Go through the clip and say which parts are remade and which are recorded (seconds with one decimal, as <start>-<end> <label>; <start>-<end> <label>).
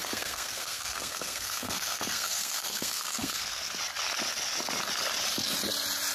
0.0-3.7 remade; 3.7-6.1 recorded